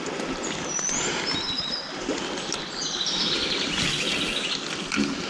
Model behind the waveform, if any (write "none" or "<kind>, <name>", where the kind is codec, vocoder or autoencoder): none